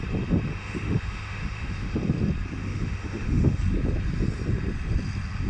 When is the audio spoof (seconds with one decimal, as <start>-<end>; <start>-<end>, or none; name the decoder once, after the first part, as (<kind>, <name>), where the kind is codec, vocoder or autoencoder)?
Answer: 0.5-2.0 (autoencoder, DAC-VAE); 2.6-3.6